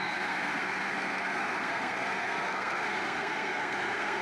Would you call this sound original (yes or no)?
no